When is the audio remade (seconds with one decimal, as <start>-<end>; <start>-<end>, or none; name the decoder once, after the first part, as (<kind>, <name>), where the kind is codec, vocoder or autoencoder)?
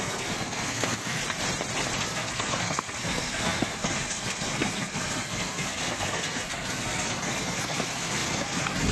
0.0-1.2 (codec, SNAC); 2.0-8.9